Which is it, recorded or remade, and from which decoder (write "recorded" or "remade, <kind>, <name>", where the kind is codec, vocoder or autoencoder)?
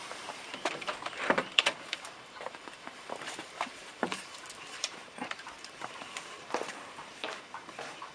remade, vocoder, BigVGAN v2